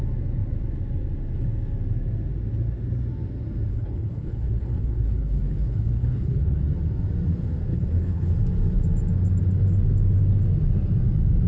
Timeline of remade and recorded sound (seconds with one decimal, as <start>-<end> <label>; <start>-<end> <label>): 0.0-3.7 recorded; 3.7-6.6 remade; 6.6-7.7 recorded; 7.7-8.3 remade; 8.3-11.5 recorded